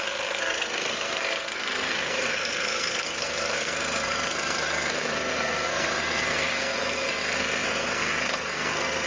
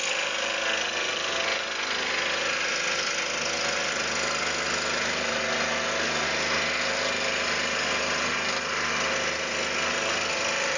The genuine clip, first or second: second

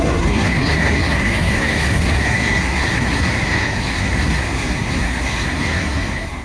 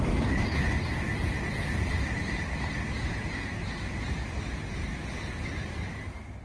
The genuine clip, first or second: second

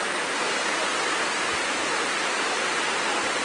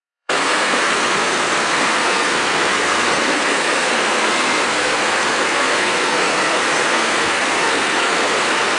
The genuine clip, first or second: first